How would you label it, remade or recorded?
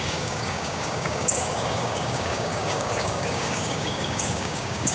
remade